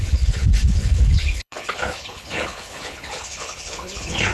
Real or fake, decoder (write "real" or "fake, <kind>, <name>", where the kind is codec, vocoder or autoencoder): fake, codec, HILCodec